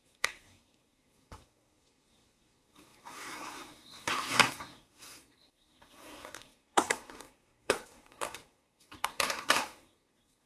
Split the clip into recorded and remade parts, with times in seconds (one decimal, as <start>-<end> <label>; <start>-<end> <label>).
0.0-10.5 remade